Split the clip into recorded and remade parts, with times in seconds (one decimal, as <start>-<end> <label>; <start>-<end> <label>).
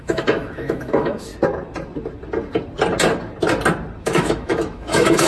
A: 0.0-1.3 remade; 1.3-4.0 recorded; 4.0-5.3 remade